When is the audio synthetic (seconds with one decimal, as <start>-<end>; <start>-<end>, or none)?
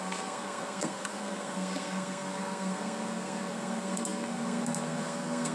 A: 0.0-5.5